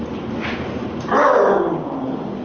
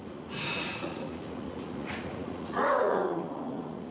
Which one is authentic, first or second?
first